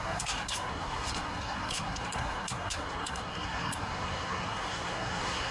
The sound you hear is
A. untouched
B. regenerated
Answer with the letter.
B